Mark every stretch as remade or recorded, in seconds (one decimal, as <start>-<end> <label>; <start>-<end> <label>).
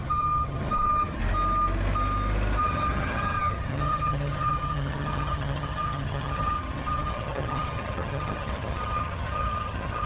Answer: 0.0-1.2 remade; 1.2-2.6 recorded; 2.6-10.1 remade